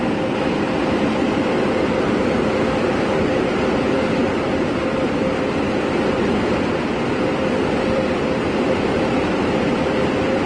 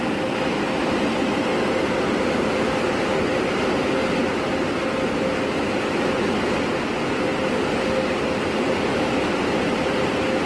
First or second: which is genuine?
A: second